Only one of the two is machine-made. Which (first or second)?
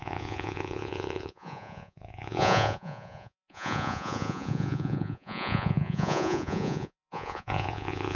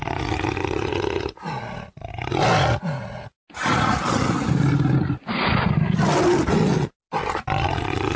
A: first